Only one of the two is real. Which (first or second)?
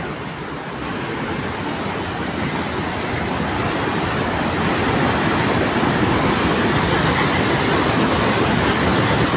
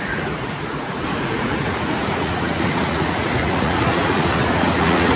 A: first